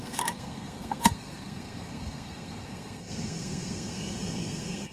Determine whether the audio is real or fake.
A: fake